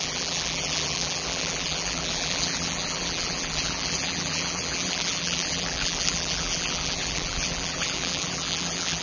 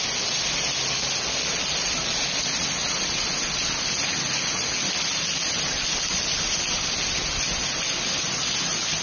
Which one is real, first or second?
second